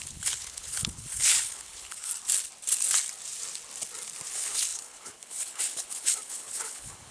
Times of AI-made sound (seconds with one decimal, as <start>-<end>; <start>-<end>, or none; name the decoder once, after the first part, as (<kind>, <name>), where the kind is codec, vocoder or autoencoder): 0.0-2.1 (codec, HILCodec); 4.3-7.1